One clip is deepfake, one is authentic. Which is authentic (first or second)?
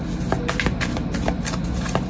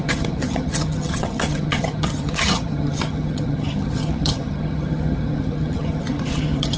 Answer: first